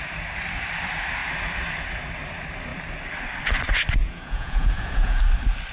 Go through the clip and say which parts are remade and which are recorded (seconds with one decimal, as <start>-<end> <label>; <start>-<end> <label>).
0.0-4.0 recorded; 4.0-5.2 remade; 5.2-5.7 recorded